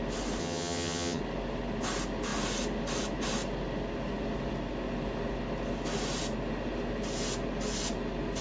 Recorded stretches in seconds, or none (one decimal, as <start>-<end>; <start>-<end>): 0.0-0.4; 1.2-8.4